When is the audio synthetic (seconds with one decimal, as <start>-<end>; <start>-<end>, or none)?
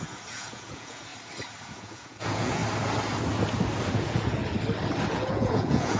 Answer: 0.0-1.1; 1.7-2.6; 3.9-4.4; 5.1-6.0